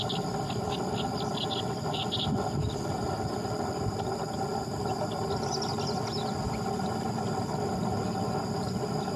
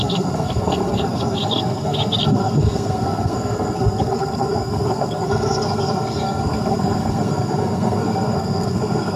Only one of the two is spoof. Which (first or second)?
second